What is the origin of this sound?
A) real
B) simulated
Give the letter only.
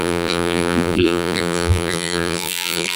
B